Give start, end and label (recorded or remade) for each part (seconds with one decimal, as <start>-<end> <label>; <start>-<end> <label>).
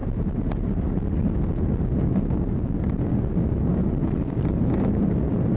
0.0-1.1 remade; 1.1-2.1 recorded; 2.1-2.6 remade; 2.6-5.6 recorded